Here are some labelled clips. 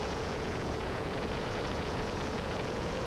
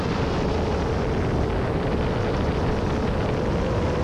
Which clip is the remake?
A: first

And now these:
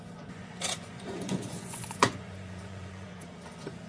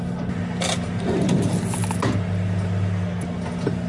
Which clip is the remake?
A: first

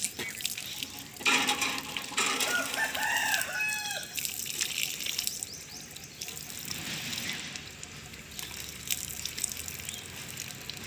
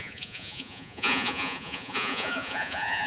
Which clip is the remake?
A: second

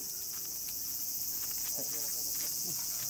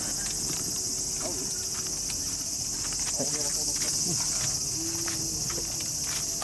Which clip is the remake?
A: first